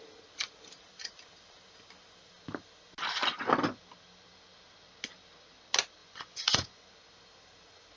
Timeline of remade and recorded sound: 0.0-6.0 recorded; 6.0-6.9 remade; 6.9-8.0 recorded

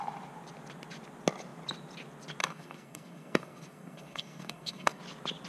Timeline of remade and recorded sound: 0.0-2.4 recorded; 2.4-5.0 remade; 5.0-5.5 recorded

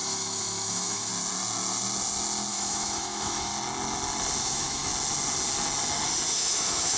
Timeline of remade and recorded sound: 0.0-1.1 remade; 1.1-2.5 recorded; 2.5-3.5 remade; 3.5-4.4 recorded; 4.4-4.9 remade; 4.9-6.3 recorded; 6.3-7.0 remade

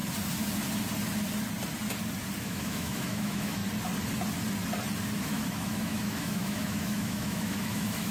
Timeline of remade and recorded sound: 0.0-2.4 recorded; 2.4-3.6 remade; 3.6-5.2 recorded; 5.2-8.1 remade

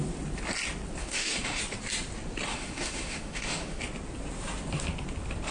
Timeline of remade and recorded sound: 0.0-1.0 recorded; 1.0-1.6 remade; 1.6-2.5 recorded; 2.5-3.8 remade; 3.8-5.5 recorded